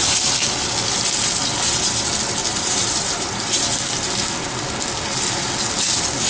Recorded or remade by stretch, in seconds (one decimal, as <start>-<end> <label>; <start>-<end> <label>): 0.0-2.4 recorded; 2.4-3.6 remade; 3.6-6.3 recorded